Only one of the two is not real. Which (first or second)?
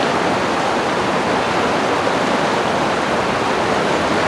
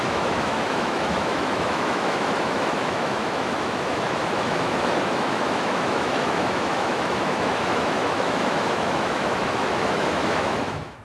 second